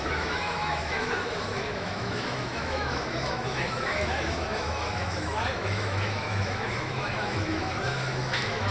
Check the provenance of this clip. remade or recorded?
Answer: remade